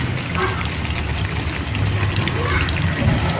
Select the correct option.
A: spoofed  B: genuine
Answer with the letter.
B